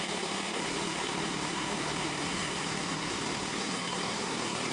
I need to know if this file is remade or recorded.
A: remade